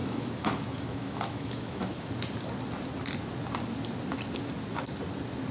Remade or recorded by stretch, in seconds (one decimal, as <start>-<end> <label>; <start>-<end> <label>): 0.0-2.1 remade; 2.1-5.5 recorded